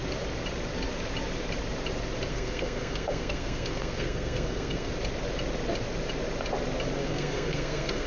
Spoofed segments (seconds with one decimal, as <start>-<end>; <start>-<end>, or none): 2.3-4.9; 7.0-8.1